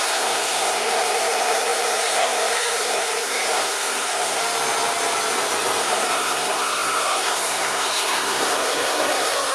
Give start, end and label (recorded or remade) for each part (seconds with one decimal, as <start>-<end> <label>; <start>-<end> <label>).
0.0-4.4 remade; 4.4-5.8 recorded; 5.8-9.5 remade